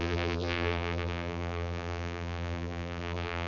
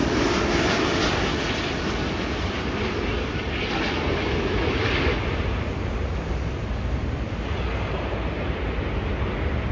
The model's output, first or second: first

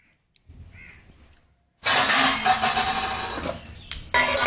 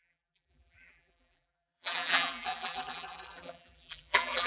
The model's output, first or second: second